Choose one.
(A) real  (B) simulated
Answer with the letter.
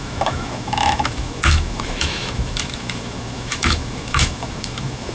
B